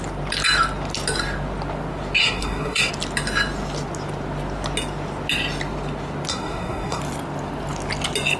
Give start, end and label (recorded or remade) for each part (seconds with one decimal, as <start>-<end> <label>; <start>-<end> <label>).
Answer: 0.0-2.2 recorded; 2.2-2.9 remade; 2.9-6.3 recorded; 6.3-7.0 remade; 7.0-8.4 recorded